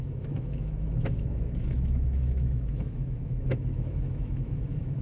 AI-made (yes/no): yes